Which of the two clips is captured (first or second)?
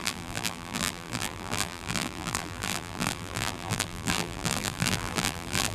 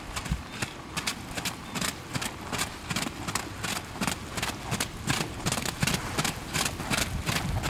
second